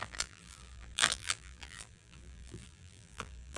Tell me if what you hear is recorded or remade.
remade